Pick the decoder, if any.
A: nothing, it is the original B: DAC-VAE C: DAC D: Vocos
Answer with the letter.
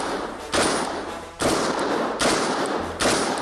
A